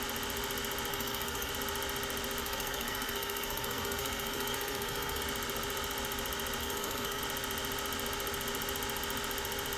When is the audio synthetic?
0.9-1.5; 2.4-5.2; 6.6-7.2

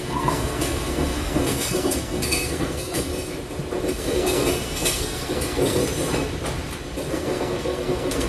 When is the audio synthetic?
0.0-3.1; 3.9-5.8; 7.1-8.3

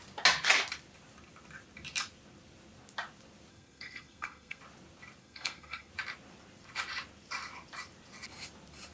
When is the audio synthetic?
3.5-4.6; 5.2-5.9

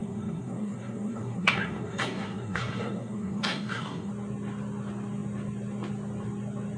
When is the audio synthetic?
0.0-4.1

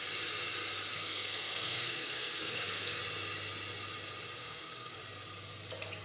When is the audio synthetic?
0.9-3.0; 4.4-5.0

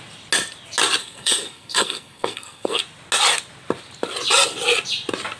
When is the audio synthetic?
1.0-2.8

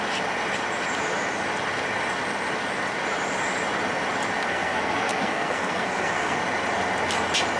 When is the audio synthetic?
4.4-6.4